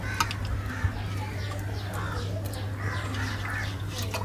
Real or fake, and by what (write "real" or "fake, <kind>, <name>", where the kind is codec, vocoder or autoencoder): real